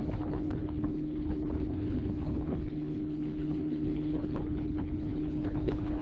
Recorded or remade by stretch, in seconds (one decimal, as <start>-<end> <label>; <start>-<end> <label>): 0.0-6.0 remade